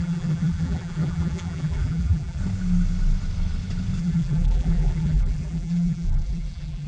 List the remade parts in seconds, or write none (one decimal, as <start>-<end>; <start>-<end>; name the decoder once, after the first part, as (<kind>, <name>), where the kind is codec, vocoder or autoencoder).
0.0-2.4 (vocoder, BigVGAN v2); 4.0-6.9